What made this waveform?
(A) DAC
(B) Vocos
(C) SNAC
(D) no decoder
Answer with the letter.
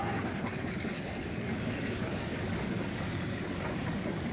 A